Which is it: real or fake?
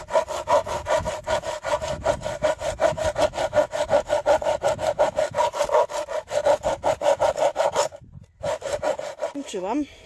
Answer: real